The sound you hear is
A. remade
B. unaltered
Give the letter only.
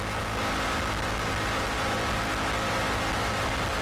B